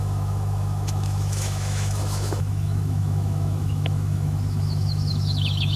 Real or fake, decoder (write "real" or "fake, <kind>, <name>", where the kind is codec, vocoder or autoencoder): fake, autoencoder, DAC-VAE